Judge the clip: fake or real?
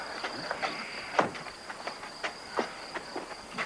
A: fake